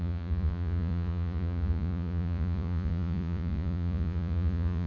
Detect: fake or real fake